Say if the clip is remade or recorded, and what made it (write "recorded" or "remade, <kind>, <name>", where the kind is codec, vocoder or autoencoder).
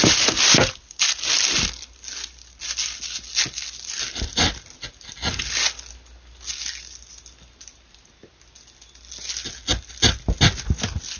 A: recorded